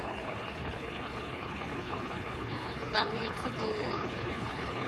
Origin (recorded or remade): remade